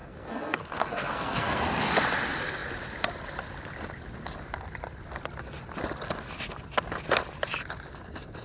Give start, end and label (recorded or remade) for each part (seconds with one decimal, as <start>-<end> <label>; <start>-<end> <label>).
0.0-1.6 remade; 1.6-8.4 recorded